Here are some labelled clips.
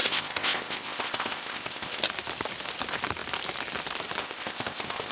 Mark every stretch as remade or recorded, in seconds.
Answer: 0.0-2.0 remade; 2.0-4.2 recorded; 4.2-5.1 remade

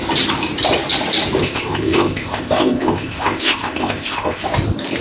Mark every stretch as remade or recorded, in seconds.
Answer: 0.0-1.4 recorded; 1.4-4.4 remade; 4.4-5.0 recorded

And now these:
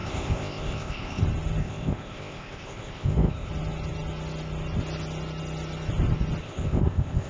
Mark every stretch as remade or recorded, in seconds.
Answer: 0.0-1.2 remade; 1.2-1.6 recorded; 1.6-3.5 remade; 3.5-6.4 recorded; 6.4-7.3 remade